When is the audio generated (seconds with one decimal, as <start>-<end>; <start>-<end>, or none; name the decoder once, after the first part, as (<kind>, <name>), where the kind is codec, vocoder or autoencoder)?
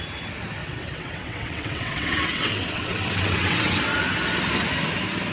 0.6-3.8 (vocoder, WaveNeXt)